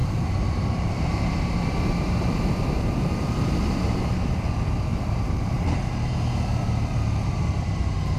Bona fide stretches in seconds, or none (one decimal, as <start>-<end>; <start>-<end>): 4.0-4.9